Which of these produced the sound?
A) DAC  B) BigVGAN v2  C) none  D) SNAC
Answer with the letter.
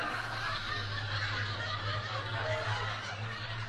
A